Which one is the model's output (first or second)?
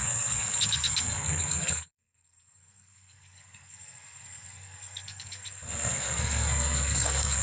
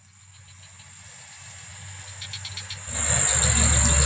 first